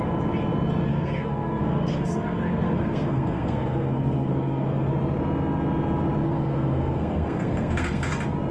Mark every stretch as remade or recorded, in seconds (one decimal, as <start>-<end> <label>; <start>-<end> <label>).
0.0-0.9 recorded; 0.9-4.9 remade; 4.9-6.2 recorded; 6.2-8.1 remade; 8.1-8.5 recorded